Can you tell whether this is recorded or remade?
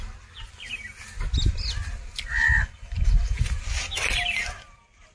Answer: recorded